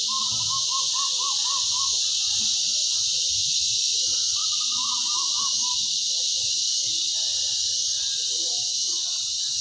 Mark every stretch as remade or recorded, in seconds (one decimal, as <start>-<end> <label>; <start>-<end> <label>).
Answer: 0.0-4.4 recorded; 4.4-5.5 remade; 5.5-9.6 recorded